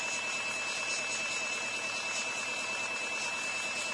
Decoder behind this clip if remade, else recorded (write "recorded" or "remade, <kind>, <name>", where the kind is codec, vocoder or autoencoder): recorded